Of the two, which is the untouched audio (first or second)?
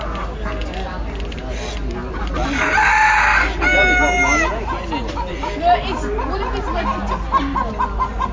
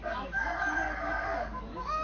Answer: first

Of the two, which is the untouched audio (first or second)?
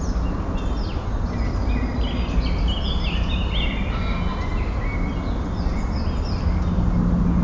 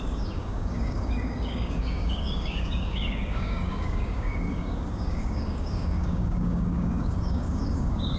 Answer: first